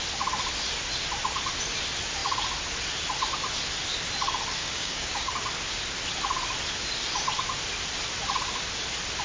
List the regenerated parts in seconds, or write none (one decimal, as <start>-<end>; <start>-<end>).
4.6-5.3